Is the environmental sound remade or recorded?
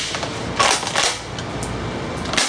recorded